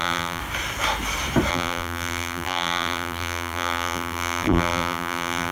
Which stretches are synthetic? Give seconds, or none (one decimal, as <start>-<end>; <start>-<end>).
0.0-0.4; 1.5-5.5